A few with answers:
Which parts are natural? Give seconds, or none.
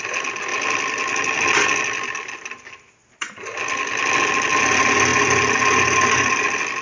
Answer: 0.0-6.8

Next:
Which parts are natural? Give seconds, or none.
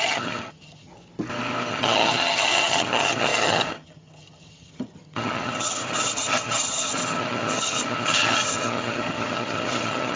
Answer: 0.9-1.7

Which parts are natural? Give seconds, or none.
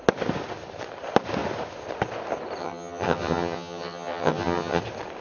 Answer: 0.0-2.6; 4.8-5.2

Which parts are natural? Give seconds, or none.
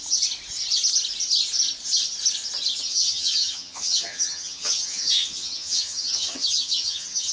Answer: 0.0-2.9